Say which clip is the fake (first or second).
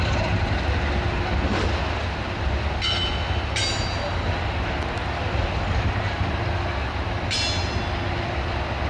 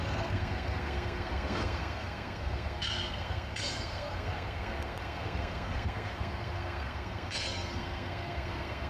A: second